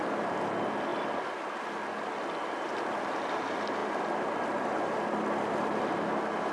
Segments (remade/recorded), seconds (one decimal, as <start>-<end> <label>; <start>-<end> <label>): 0.0-6.5 recorded